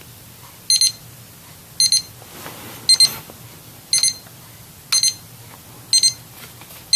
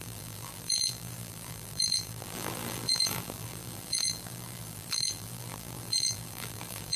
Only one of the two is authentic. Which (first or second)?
first